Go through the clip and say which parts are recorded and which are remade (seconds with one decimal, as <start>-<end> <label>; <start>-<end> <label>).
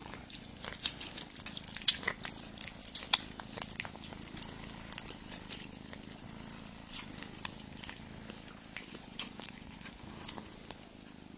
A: 0.0-1.1 remade; 1.1-8.9 recorded; 8.9-10.1 remade; 10.1-11.4 recorded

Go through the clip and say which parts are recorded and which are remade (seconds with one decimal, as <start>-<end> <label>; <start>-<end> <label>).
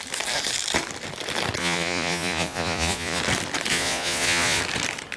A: 0.0-1.6 recorded; 1.6-3.2 remade; 3.2-3.7 recorded; 3.7-4.6 remade; 4.6-5.2 recorded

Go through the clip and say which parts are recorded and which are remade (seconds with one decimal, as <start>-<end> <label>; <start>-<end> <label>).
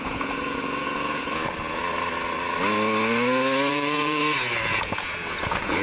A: 0.0-1.8 remade; 1.8-3.7 recorded; 3.7-4.2 remade; 4.2-4.7 recorded; 4.7-5.8 remade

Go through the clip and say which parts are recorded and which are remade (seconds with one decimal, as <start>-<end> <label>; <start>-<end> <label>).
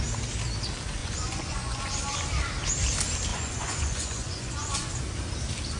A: 0.0-1.0 recorded; 1.0-1.8 remade; 1.8-3.3 recorded; 3.3-4.9 remade; 4.9-5.8 recorded